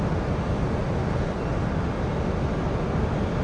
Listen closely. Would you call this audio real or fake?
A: real